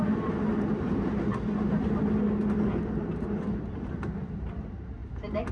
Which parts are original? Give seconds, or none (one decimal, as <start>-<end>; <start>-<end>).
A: 0.0-5.5